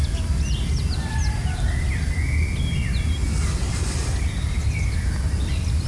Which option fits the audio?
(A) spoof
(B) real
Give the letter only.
B